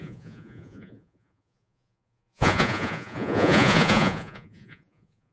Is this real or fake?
fake